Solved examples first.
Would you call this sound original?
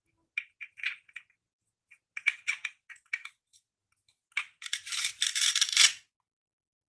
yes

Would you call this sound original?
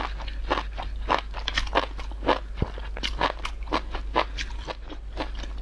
yes